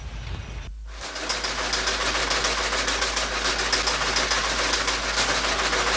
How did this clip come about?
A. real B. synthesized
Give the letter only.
A